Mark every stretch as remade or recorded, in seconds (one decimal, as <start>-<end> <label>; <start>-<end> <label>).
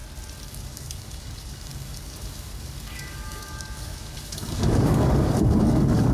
0.0-0.5 recorded; 0.5-6.1 remade